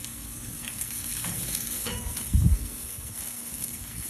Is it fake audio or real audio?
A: fake